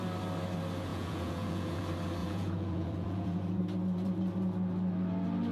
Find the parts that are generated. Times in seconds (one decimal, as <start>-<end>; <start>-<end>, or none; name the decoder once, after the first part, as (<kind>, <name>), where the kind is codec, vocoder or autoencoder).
0.9-1.8 (vocoder, Vocos); 2.2-3.6